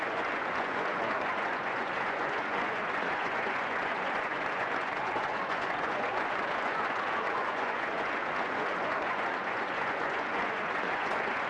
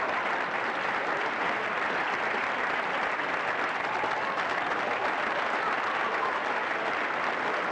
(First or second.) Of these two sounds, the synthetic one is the first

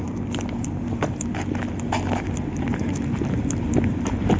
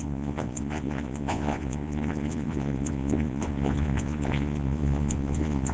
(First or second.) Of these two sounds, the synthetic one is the second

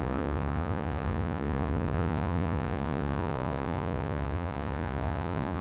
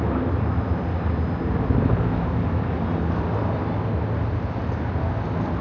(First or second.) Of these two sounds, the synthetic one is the first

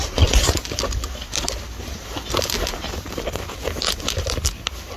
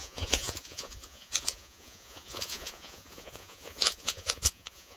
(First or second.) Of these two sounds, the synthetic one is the second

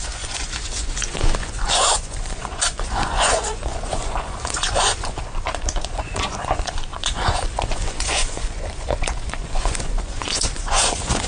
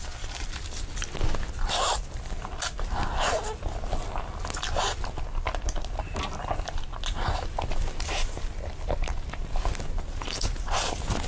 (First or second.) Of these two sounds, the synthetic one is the first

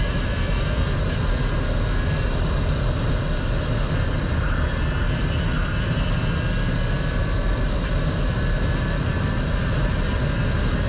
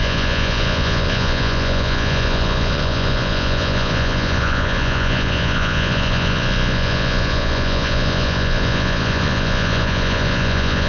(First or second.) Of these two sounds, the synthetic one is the second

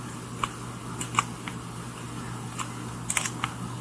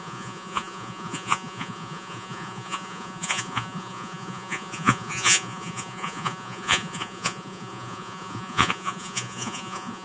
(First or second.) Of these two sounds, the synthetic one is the second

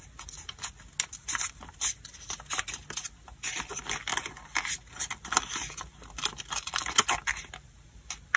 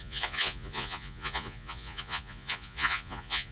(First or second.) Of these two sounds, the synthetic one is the second